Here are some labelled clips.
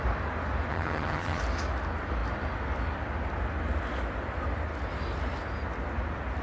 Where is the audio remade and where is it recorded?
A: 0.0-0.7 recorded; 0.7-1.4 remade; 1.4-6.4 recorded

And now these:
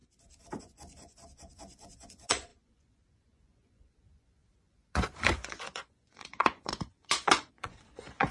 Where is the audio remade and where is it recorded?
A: 0.0-0.6 recorded; 0.6-8.3 remade

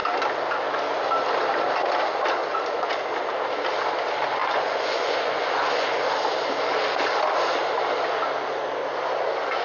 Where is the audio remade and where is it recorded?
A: 0.0-2.4 recorded; 2.4-2.9 remade; 2.9-4.4 recorded; 4.4-5.9 remade; 5.9-9.6 recorded

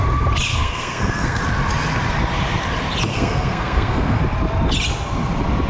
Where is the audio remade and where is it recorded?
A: 0.0-0.5 recorded; 0.5-1.4 remade; 1.4-3.1 recorded; 3.1-4.2 remade; 4.2-5.7 recorded

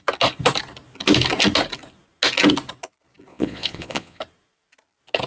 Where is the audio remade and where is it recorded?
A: 0.0-3.3 recorded; 3.3-4.2 remade; 4.2-5.3 recorded

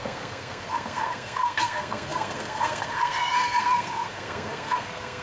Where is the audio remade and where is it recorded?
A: 0.0-5.2 remade

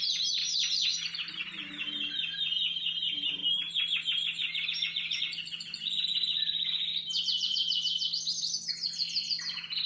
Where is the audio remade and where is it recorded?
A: 0.0-9.9 recorded

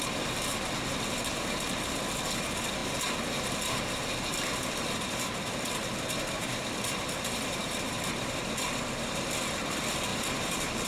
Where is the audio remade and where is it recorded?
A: 0.0-0.5 recorded; 0.5-1.3 remade; 1.3-4.3 recorded; 4.3-9.4 remade; 9.4-10.1 recorded; 10.1-10.9 remade